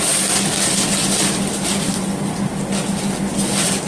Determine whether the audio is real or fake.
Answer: real